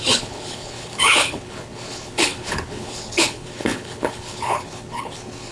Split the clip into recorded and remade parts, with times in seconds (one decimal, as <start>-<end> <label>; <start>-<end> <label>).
0.0-5.5 remade